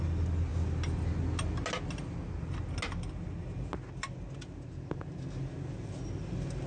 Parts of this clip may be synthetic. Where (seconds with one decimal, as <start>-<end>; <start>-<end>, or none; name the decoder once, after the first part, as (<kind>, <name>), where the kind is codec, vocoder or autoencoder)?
none